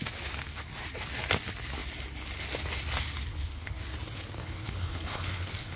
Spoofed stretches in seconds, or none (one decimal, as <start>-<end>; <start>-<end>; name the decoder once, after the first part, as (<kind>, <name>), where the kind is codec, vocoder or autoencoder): 3.3-3.8 (codec, HILCodec); 4.4-5.8

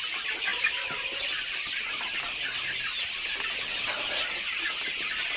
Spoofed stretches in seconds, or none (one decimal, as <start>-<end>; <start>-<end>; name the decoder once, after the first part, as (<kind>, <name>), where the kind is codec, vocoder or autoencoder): none

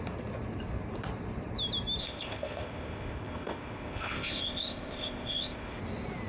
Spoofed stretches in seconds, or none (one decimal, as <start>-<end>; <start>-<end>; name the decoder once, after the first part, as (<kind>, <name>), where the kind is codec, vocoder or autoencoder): 2.0-5.8 (codec, ZipCodec)

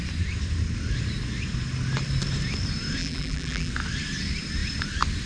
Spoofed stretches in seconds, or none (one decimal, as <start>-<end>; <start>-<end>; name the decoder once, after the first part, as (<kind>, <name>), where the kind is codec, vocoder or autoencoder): 3.0-3.7 (vocoder, BigVGAN v2)

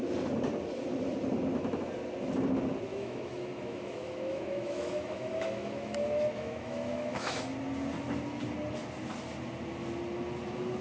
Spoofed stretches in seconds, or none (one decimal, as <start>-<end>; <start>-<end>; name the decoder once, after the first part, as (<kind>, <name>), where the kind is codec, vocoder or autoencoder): 2.9-7.4 (autoencoder, DAC-VAE)